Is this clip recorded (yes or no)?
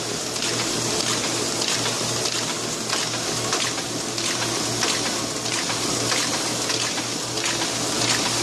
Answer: yes